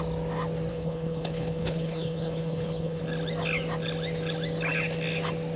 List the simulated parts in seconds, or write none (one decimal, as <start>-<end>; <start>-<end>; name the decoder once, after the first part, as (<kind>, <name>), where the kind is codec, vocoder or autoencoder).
0.7-3.0 (codec, HILCodec)